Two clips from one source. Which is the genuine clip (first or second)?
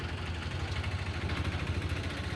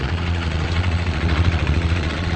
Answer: first